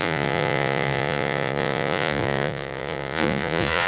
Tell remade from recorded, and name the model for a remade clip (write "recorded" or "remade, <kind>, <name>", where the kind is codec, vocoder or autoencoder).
remade, vocoder, Vocos